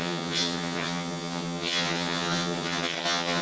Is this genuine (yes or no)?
no